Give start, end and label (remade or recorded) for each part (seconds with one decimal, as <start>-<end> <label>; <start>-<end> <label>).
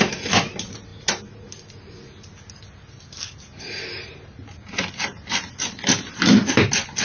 0.0-7.0 recorded